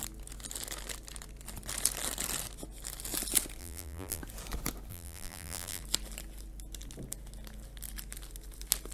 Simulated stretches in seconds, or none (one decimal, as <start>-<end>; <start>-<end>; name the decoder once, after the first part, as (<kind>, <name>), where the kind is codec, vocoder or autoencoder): 3.6-4.2 (vocoder, BigVGAN v2); 4.9-5.8